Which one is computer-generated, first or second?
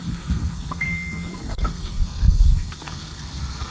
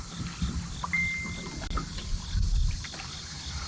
first